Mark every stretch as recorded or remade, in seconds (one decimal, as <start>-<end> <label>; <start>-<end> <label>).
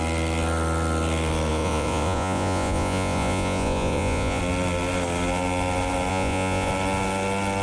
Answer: 0.0-1.5 recorded; 1.5-4.4 remade; 4.4-6.1 recorded; 6.1-6.7 remade; 6.7-7.6 recorded